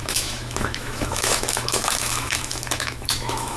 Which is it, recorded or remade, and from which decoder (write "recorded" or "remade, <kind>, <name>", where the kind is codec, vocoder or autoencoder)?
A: remade, autoencoder, DAC-VAE